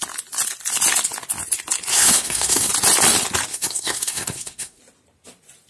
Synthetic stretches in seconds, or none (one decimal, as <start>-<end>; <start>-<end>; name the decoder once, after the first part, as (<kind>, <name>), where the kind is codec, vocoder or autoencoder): 1.9-2.7 (codec, SNAC); 3.5-4.8